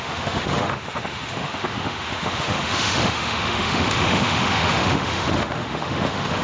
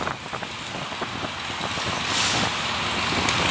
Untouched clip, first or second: second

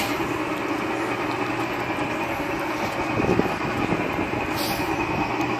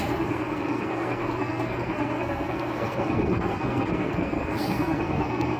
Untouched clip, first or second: first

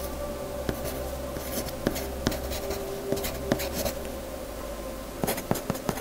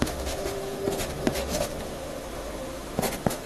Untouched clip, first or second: first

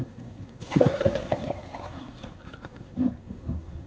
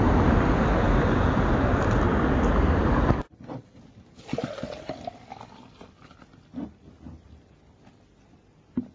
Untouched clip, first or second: second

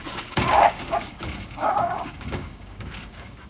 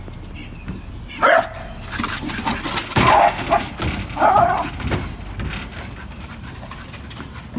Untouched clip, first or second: second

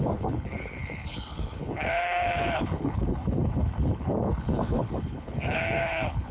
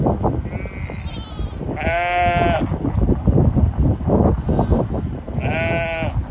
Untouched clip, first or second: second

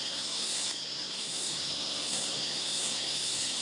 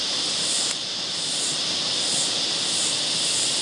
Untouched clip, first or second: second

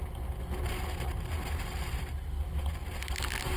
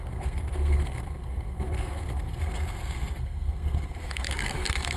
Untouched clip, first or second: first